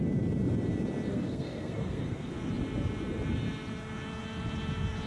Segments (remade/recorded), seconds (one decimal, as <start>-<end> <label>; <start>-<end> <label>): 0.0-1.1 recorded; 1.1-2.3 remade; 2.3-5.1 recorded

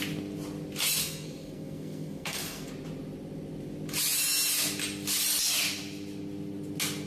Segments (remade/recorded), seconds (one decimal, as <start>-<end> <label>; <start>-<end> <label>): 0.0-1.0 recorded; 1.0-2.7 remade; 2.7-7.1 recorded

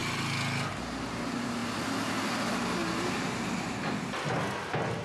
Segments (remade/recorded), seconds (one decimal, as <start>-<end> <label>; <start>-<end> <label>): 0.0-5.0 recorded